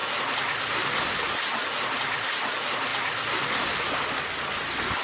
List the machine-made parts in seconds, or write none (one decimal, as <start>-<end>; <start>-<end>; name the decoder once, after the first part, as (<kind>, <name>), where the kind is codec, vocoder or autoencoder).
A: none